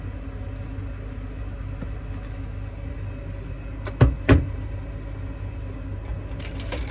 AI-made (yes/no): no